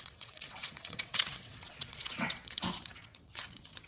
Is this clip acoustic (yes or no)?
no